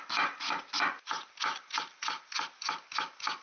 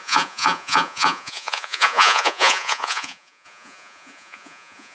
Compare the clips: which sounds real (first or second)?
first